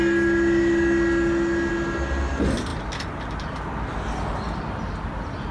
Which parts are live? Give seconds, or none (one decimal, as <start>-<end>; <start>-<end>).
0.0-5.5